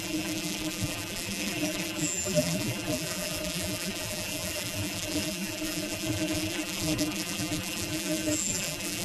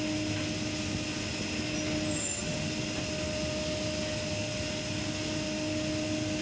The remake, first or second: first